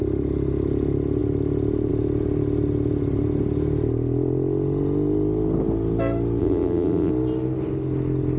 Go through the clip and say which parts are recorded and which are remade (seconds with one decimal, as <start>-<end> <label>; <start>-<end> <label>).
0.0-6.4 recorded; 6.4-7.1 remade; 7.1-8.4 recorded